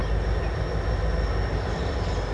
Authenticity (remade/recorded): recorded